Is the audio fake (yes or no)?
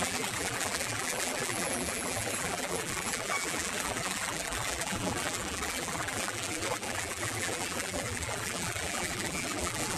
yes